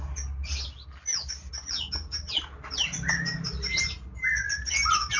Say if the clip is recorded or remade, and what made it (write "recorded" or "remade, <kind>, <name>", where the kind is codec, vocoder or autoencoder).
recorded